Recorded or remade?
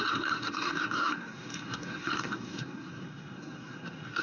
remade